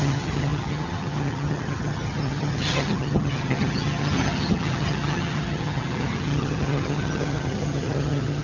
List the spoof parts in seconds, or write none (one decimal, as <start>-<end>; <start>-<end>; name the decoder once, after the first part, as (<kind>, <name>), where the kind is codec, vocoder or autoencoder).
0.0-8.4 (vocoder, HiFi-GAN)